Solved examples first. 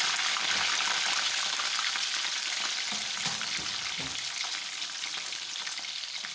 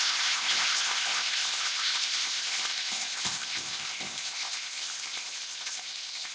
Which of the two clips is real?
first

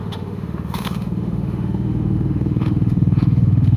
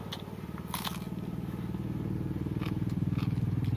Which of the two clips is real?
second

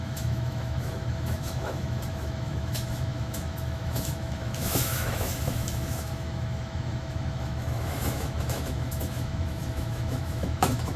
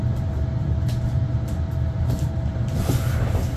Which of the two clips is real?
second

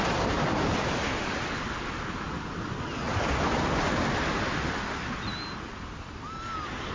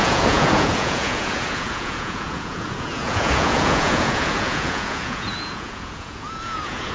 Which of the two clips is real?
first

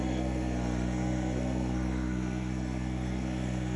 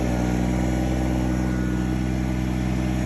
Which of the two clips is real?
second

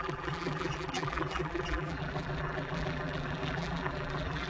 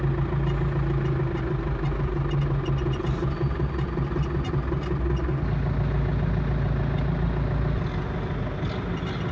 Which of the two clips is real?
second